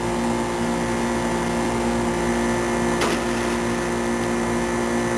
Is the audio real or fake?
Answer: real